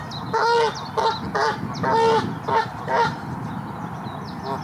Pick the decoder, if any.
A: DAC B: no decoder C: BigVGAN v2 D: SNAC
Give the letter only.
B